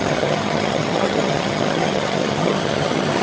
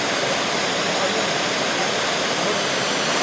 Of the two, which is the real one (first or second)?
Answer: second